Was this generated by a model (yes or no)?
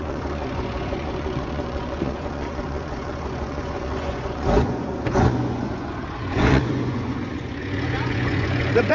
yes